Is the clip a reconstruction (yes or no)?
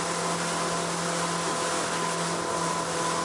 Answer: no